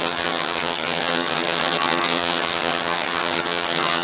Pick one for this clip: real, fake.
fake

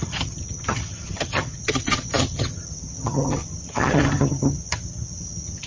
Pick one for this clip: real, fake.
fake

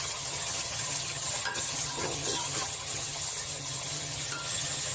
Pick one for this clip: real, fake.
fake